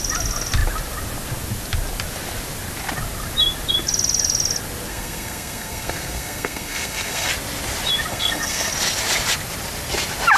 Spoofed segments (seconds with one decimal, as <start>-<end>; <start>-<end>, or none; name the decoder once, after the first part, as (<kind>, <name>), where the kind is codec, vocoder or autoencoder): 4.9-7.3 (codec, SNAC); 8.1-8.7